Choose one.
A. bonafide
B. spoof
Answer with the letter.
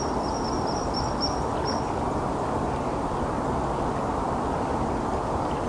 A